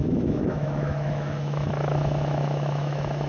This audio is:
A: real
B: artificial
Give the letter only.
B